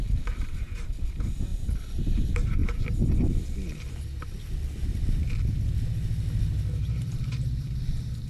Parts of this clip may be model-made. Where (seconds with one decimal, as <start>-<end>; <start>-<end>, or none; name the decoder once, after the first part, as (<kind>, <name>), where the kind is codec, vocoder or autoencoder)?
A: 0.0-1.5 (vocoder, BigVGAN v2); 2.1-2.6; 7.0-8.3